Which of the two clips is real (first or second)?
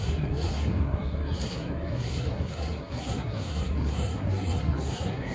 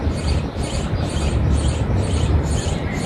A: second